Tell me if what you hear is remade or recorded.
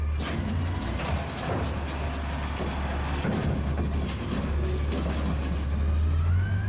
recorded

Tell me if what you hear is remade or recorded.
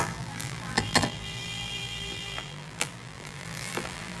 remade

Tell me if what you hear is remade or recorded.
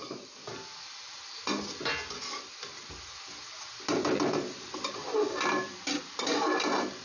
recorded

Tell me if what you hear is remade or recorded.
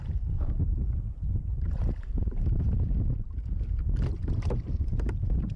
remade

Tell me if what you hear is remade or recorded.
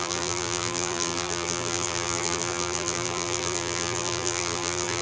remade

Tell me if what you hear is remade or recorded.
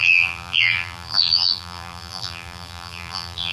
remade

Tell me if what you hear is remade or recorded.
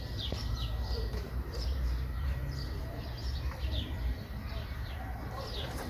remade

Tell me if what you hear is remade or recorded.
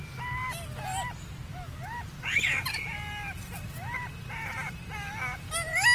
recorded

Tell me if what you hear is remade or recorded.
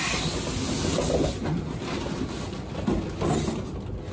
recorded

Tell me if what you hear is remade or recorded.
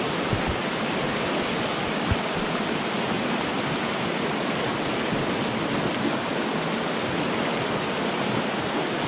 recorded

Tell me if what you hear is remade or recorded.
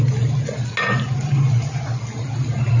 recorded